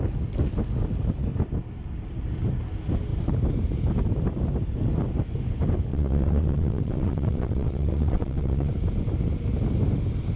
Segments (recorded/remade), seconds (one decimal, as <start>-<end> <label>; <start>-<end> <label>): 0.0-5.9 recorded; 5.9-8.7 remade; 8.7-10.4 recorded